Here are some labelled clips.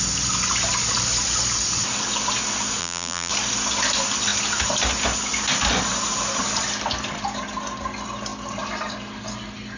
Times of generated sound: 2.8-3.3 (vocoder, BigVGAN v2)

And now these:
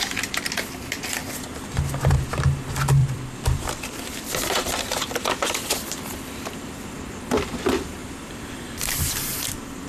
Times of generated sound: 1.2-2.3 (vocoder, BigVGAN v2); 3.0-5.7; 8.0-9.1